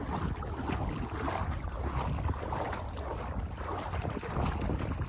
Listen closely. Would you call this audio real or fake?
real